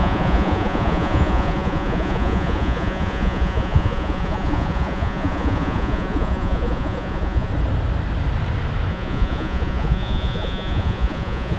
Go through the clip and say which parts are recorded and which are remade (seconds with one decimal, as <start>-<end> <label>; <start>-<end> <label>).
0.0-7.5 remade; 7.5-8.9 recorded; 8.9-11.6 remade